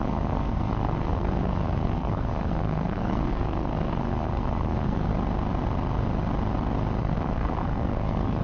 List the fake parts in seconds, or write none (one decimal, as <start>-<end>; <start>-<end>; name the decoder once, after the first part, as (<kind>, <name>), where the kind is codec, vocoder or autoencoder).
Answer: 0.0-5.1 (codec, SNAC); 7.0-8.4